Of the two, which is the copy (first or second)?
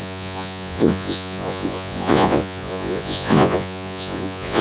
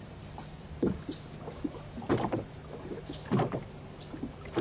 first